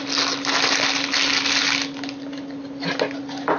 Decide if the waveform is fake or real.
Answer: real